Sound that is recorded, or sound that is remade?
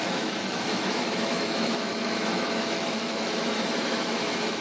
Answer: remade